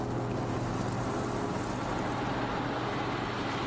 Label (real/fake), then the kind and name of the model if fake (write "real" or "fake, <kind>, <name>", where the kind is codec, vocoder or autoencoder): real